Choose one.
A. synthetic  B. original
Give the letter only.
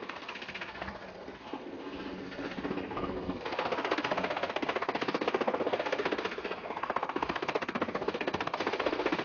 A